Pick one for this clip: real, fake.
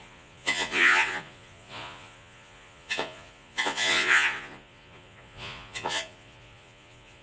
fake